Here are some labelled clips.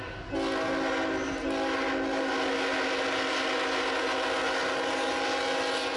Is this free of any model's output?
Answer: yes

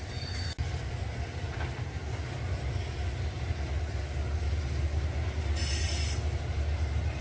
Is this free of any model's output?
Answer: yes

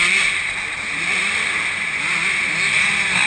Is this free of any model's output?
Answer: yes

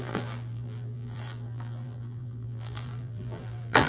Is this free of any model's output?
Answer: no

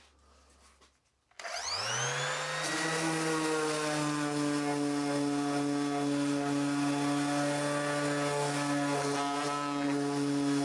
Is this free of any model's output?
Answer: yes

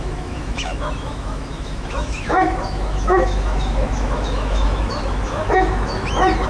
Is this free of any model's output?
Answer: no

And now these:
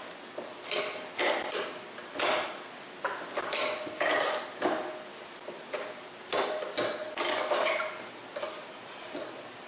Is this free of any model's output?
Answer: yes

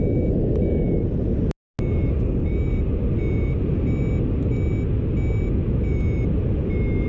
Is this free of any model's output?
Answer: yes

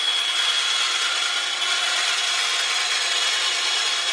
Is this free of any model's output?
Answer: yes